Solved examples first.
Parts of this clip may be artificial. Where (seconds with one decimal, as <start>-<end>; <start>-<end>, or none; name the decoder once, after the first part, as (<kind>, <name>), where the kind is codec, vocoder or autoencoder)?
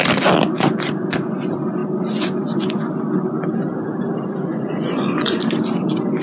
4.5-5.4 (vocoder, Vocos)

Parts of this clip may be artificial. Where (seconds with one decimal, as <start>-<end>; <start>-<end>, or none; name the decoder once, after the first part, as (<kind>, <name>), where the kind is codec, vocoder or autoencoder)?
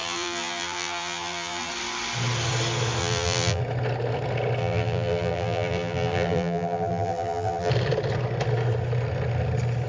0.0-1.7 (vocoder, BigVGAN v2); 3.0-3.6; 4.6-7.7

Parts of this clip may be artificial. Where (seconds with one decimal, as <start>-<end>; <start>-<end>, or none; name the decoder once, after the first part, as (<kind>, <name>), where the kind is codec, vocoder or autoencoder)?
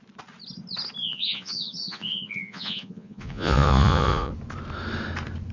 1.0-4.3 (vocoder, Vocos)